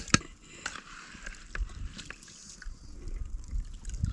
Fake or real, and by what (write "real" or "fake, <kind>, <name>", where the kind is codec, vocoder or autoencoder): real